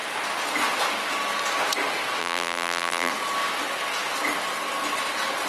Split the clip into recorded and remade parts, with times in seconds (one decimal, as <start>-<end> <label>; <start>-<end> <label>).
0.0-2.2 recorded; 2.2-3.1 remade; 3.1-5.5 recorded